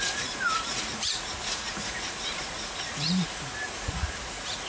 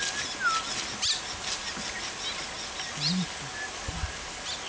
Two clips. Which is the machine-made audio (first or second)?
first